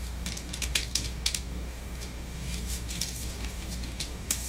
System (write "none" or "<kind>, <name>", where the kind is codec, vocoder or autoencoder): codec, DAC